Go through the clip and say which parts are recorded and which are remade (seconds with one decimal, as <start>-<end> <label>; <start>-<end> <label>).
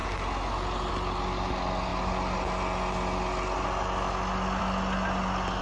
0.0-5.6 recorded